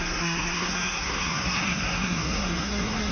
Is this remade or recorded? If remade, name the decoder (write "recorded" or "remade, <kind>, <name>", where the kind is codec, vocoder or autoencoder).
remade, codec, SNAC